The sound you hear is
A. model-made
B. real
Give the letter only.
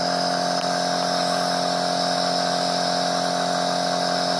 B